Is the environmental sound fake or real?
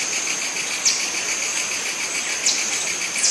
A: real